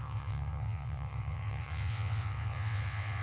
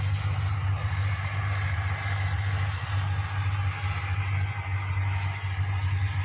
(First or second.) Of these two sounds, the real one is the second